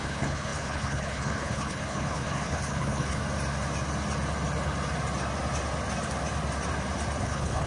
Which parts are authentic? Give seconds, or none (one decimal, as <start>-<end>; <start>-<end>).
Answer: 3.2-7.2

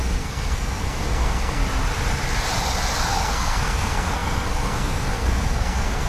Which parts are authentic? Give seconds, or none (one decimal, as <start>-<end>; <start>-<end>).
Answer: 1.6-3.2

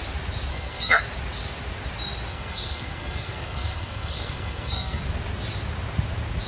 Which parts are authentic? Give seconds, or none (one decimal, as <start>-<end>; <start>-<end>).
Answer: 0.0-0.5; 1.0-2.3; 5.0-6.5

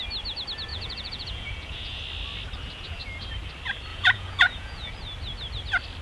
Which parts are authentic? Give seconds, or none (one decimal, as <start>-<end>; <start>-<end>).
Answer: 0.0-0.7; 2.0-3.9; 4.9-6.0

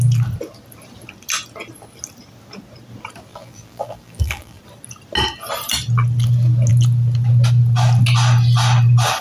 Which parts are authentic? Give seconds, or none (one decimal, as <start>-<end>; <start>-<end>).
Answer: 0.0-3.3; 4.6-9.2